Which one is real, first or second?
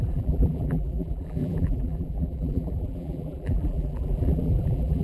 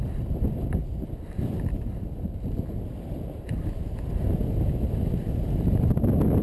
second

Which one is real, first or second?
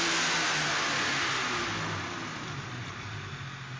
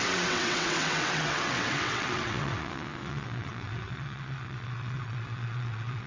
first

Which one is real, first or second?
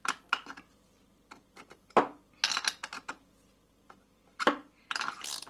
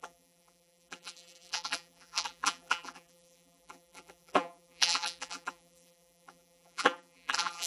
first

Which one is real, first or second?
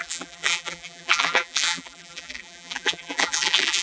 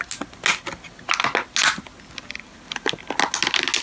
second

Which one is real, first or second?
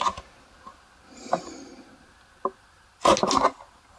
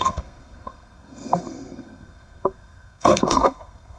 first